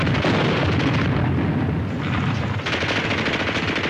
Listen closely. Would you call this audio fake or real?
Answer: real